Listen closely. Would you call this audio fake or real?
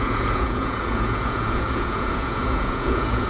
fake